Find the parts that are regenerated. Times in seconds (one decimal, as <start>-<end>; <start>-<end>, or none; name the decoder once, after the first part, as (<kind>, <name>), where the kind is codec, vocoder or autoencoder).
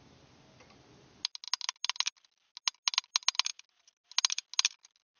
none